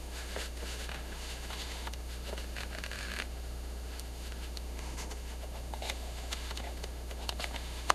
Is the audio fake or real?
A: fake